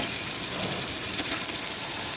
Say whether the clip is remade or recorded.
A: recorded